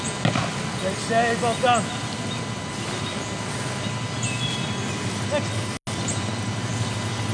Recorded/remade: recorded